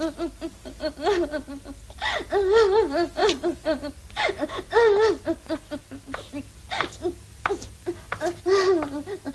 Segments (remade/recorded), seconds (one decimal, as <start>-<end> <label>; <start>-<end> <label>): 0.0-3.2 recorded; 3.2-5.8 remade; 5.8-9.3 recorded